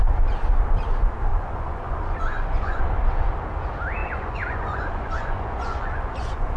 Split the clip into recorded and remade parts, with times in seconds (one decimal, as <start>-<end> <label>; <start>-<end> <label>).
0.0-1.3 recorded; 1.3-2.8 remade; 2.8-4.0 recorded; 4.0-6.6 remade